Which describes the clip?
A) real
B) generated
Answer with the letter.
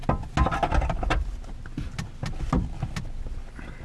A